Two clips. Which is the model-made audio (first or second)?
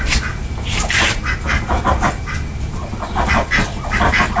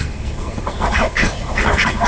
second